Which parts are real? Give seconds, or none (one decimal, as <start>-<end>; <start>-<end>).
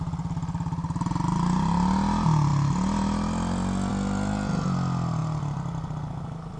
0.0-6.6